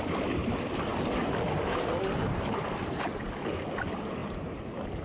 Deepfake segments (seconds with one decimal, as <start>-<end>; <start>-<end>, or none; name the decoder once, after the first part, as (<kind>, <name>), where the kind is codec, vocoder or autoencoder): 4.2-5.0 (vocoder, BigVGAN v2)